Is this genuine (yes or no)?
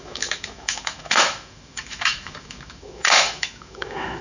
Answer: no